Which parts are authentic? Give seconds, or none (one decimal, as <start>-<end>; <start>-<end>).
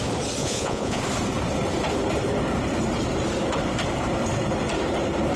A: 0.0-0.4; 1.0-5.4